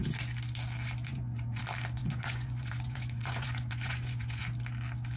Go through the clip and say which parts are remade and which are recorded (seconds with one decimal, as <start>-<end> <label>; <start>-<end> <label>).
0.0-1.1 recorded; 1.1-1.6 remade; 1.6-2.0 recorded; 2.0-4.4 remade; 4.4-5.2 recorded